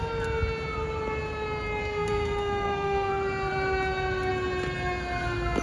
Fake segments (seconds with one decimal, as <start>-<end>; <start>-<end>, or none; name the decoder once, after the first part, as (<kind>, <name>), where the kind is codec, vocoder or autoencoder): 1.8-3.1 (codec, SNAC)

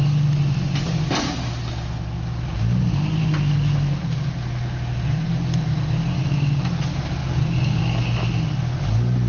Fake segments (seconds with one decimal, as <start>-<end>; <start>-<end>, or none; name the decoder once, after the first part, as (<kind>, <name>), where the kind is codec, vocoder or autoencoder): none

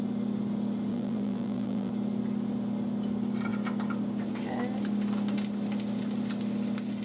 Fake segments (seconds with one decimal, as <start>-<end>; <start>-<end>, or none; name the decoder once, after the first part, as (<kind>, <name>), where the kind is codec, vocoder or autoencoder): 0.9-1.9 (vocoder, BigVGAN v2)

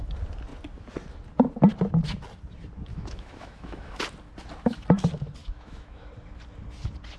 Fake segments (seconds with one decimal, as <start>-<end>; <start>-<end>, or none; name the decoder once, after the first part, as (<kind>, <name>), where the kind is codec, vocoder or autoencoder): 2.9-4.0 (autoencoder, DAC-VAE); 5.4-6.1

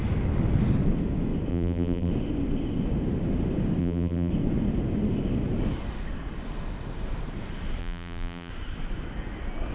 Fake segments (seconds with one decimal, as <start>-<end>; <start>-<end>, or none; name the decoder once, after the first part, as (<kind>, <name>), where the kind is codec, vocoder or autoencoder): 1.5-2.1 (vocoder, BigVGAN v2); 3.8-4.3; 7.8-8.5